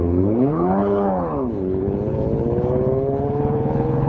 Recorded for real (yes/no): no